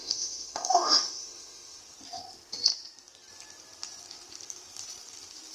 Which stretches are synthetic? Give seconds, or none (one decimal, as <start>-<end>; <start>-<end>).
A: 0.0-1.8